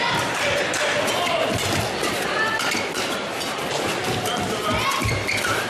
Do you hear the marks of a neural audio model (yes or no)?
no